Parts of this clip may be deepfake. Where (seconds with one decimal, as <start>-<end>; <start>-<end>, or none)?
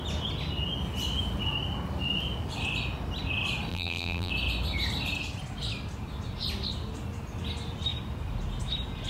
3.7-4.3